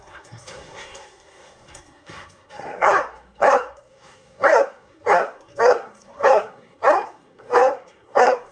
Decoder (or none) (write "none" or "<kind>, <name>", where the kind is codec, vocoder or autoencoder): codec, SNAC